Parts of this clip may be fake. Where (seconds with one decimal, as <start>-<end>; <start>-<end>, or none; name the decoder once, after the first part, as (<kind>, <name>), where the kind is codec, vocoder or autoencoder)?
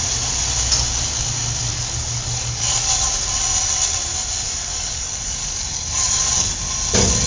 1.7-3.1 (codec, DAC); 4.6-6.5